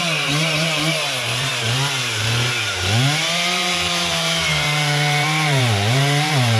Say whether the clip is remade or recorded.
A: remade